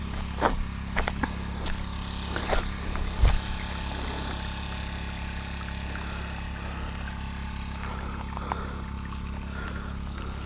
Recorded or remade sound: recorded